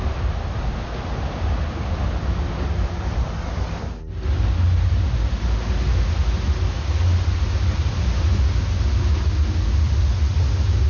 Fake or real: real